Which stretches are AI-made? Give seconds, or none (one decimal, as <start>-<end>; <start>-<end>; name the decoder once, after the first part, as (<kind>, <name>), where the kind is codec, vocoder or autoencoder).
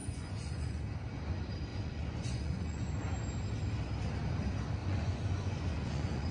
0.0-0.8 (vocoder, Vocos); 1.7-2.9; 4.8-6.3